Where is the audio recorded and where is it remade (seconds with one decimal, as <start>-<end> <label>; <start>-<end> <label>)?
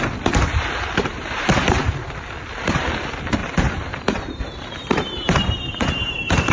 0.0-1.0 recorded; 1.0-1.8 remade; 1.8-3.4 recorded; 3.4-6.5 remade